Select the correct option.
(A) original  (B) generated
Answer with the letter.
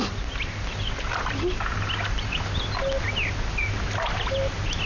A